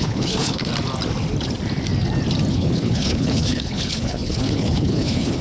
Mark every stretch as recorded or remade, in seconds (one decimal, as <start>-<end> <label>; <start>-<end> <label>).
0.0-0.7 remade; 0.7-2.5 recorded; 2.5-5.4 remade